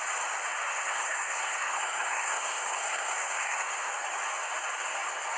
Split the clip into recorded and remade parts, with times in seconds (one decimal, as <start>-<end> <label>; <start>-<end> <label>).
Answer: 0.0-0.7 recorded; 0.7-3.9 remade; 3.9-5.4 recorded